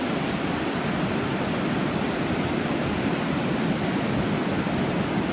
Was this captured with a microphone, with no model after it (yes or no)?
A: yes